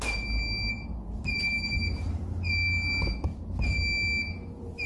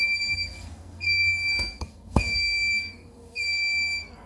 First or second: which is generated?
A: second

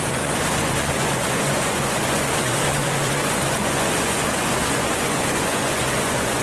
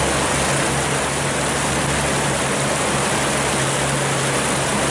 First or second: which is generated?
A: first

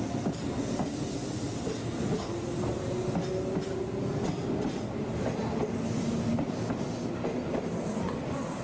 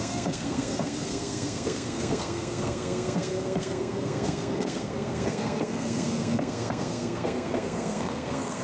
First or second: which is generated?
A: second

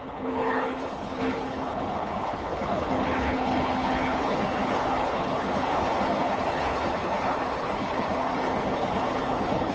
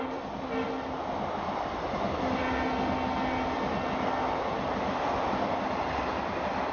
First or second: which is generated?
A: first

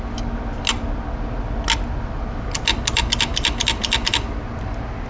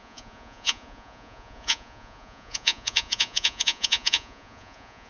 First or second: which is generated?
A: second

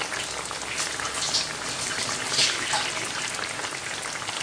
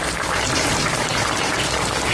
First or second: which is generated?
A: second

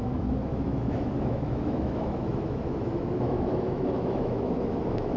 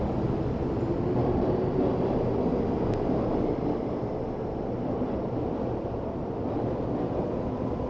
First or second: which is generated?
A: first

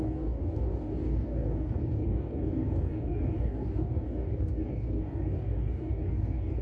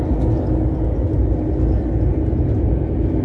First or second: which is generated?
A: first